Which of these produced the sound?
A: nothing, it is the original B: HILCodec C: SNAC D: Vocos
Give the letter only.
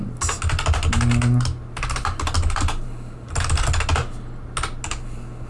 A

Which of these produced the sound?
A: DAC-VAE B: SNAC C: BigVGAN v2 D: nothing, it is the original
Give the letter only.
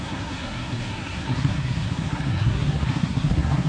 B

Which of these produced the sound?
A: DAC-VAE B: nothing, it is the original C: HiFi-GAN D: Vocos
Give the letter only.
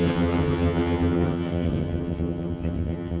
C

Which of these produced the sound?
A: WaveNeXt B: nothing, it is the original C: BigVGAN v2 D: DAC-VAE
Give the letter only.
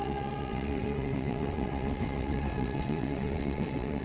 A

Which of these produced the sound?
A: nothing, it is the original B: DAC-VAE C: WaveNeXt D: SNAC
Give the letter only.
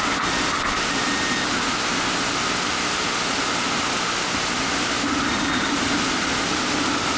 A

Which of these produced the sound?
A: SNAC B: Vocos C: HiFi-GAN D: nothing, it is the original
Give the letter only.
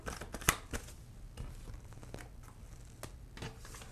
D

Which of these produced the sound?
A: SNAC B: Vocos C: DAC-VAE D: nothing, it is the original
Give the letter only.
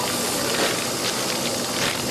D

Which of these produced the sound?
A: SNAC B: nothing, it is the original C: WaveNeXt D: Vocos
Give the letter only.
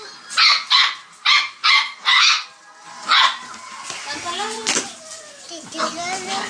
B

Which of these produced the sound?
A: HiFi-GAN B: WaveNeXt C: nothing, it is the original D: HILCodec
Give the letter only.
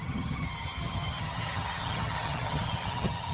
A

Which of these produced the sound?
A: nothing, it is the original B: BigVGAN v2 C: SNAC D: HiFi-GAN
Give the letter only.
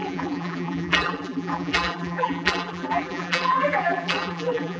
B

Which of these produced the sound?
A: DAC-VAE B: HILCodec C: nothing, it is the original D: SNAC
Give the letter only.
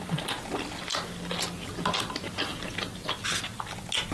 C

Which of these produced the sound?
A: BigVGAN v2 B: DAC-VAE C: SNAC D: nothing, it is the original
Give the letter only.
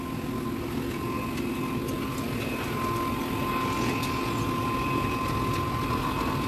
D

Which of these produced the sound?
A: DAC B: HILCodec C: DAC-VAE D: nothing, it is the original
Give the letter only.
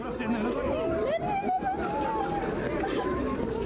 D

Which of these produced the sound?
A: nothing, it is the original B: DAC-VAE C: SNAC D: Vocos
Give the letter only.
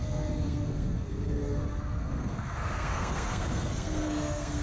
C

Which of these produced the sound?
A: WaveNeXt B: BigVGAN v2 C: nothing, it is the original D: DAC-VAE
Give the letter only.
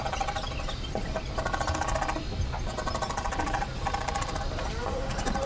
B